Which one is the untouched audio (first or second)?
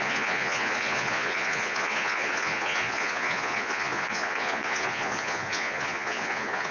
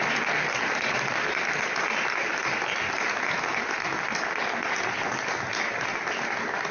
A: second